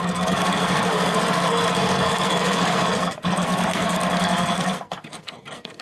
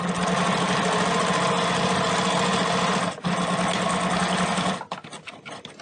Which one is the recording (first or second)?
second